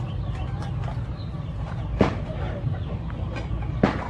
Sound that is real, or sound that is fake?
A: real